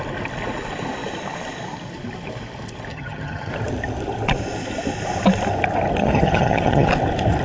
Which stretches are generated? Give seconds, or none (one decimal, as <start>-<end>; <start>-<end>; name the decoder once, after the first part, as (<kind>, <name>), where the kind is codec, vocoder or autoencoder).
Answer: 2.9-3.5 (vocoder, HiFi-GAN); 6.0-6.9